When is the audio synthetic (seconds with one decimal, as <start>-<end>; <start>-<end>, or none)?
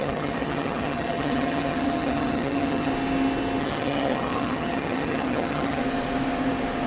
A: 0.0-2.9; 3.6-5.8